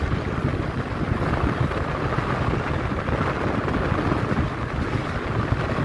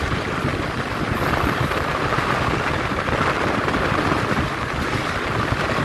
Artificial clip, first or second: second